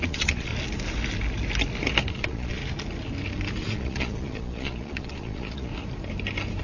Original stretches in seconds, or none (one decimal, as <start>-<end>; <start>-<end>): 0.5-2.1; 2.6-3.6; 5.7-6.6